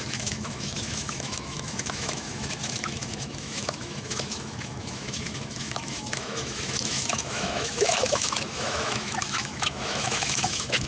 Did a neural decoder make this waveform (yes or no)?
yes